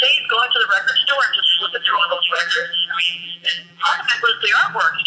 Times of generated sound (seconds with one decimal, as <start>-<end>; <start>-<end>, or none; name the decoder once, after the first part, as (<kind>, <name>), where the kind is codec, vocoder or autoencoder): 1.5-4.0 (vocoder, BigVGAN v2)